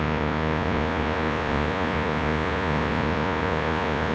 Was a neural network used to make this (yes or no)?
yes